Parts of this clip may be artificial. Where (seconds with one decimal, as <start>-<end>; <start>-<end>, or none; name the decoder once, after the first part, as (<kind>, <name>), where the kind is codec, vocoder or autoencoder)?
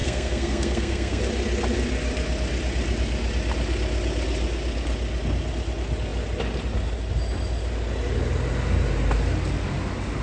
0.0-1.2 (codec, SNAC)